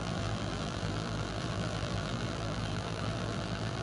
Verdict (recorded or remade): remade